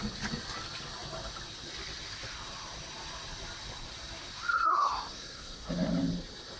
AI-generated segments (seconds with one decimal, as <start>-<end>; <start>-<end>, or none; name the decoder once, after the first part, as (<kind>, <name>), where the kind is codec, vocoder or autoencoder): 4.5-5.7 (codec, SNAC)